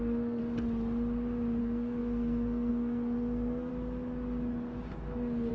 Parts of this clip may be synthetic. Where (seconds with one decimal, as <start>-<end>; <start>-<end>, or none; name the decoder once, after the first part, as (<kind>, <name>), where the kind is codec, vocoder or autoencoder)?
0.0-0.4 (codec, SNAC); 1.6-3.7